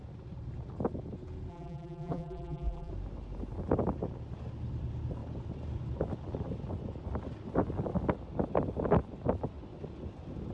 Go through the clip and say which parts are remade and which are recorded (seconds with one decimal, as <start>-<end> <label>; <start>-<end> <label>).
0.0-1.5 recorded; 1.5-2.9 remade; 2.9-10.5 recorded